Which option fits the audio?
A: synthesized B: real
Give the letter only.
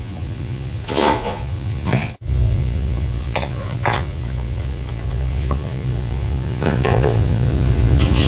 A